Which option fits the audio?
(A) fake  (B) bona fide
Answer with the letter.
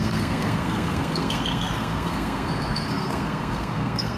A